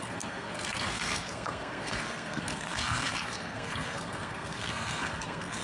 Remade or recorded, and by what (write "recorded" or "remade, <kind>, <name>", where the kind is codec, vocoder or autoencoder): remade, codec, SNAC